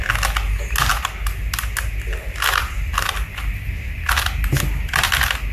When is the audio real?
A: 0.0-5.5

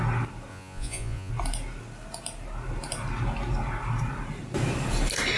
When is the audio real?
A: 0.0-0.5; 1.3-5.4

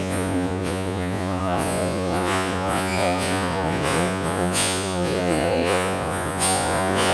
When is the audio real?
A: none